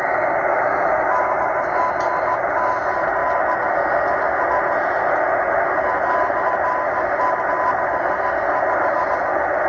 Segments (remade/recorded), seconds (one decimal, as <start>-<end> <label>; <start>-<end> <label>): 0.0-0.5 recorded; 0.5-1.5 remade; 1.5-9.7 recorded